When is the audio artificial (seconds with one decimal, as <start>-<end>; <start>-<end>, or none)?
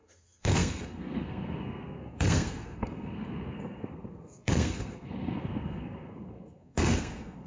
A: 0.0-7.5